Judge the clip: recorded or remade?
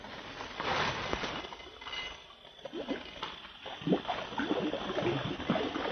remade